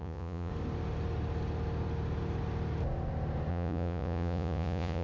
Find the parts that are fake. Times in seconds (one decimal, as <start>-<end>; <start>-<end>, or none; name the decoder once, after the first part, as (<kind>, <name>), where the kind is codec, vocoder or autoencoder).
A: 0.0-0.5 (vocoder, Vocos); 3.5-5.0